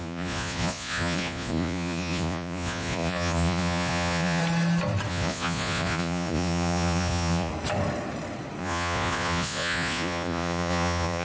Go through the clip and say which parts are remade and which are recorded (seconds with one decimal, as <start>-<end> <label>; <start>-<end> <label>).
0.0-4.4 remade; 4.4-5.1 recorded; 5.1-7.5 remade; 7.5-8.6 recorded; 8.6-11.2 remade